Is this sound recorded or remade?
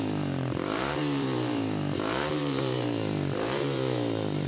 remade